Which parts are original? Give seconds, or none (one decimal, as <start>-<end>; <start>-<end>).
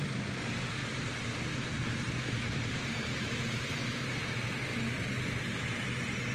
0.0-0.8; 4.6-6.3